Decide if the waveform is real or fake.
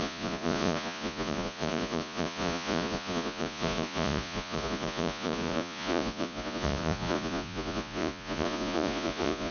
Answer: fake